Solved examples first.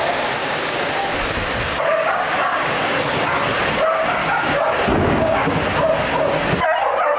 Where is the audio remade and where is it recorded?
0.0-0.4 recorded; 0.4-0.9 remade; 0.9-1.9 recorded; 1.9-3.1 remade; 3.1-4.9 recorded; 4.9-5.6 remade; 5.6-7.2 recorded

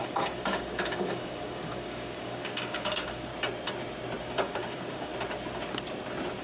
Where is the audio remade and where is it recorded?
0.0-3.3 remade; 3.3-4.2 recorded; 4.2-5.1 remade; 5.1-6.4 recorded

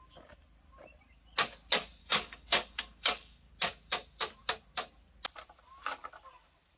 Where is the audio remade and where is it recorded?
0.0-2.0 recorded; 2.0-3.5 remade; 3.5-6.8 recorded

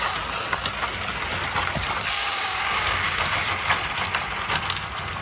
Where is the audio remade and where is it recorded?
0.0-2.2 recorded; 2.2-3.4 remade; 3.4-5.2 recorded

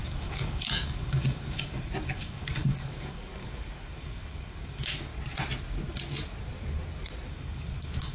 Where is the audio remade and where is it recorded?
0.0-5.1 remade; 5.1-7.3 recorded; 7.3-8.1 remade

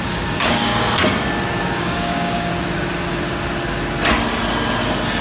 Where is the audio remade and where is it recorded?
0.0-0.7 remade; 0.7-1.6 recorded; 1.6-2.5 remade; 2.5-5.2 recorded